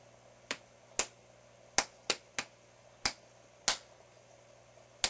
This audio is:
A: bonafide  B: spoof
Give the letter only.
A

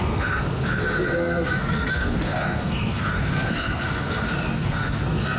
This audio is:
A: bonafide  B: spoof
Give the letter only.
B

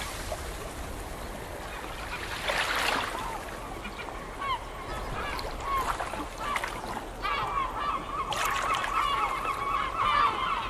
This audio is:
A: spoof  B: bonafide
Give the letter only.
B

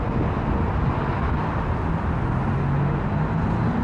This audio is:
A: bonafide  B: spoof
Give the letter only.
A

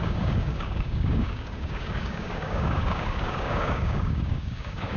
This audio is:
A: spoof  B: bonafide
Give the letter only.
A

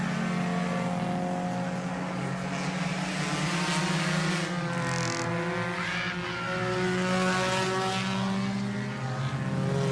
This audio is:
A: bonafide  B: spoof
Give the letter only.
A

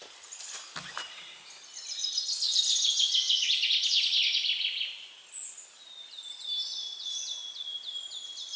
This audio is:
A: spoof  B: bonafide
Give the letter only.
B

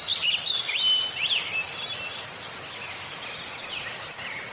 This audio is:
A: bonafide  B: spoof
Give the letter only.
A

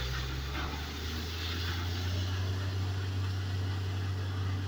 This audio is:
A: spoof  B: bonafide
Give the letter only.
B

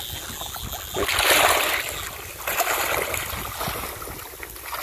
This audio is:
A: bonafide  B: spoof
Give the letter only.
A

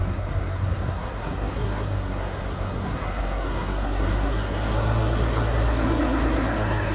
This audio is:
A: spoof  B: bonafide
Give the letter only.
A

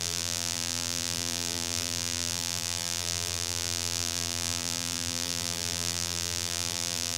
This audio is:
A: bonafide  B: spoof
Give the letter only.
B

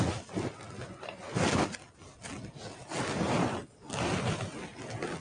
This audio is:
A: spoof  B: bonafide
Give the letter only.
B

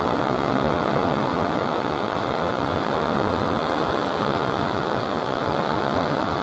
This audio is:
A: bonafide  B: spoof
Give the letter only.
B